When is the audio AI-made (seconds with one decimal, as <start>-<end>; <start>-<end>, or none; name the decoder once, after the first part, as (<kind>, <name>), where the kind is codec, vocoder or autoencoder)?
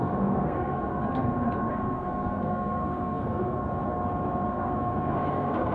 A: 0.0-0.9 (codec, SNAC); 1.7-3.6; 4.5-5.7